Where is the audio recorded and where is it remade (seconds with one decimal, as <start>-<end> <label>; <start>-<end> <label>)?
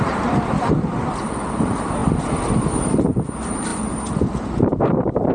0.0-2.0 remade; 2.0-2.5 recorded; 2.5-5.3 remade